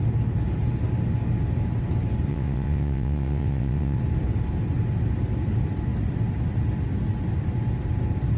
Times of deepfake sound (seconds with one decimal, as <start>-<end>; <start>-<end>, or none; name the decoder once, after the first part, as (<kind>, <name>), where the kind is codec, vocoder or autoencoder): 2.3-4.0 (vocoder, WaveNeXt)